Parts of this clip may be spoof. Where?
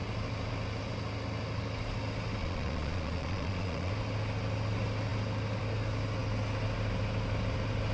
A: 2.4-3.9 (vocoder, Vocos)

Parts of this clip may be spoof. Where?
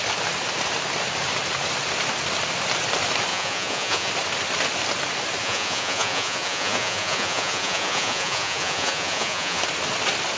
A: 3.3-4.1 (vocoder, Vocos); 5.4-9.6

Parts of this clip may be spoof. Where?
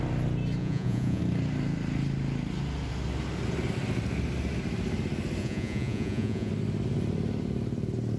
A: 0.6-1.2 (vocoder, Vocos); 5.4-6.5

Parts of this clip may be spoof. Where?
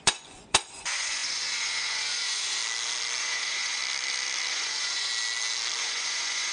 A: 0.0-2.6 (vocoder, Vocos); 3.2-3.8; 4.5-5.1; 5.8-6.5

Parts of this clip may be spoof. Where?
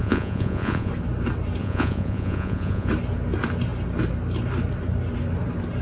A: 0.0-0.9 (vocoder, Vocos); 1.6-2.9